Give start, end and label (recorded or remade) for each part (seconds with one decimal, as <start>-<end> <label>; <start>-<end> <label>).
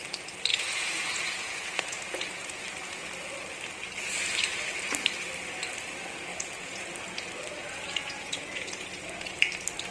0.0-0.5 recorded; 0.5-2.6 remade; 2.6-6.3 recorded; 6.3-6.9 remade; 6.9-7.6 recorded; 7.6-9.4 remade; 9.4-9.9 recorded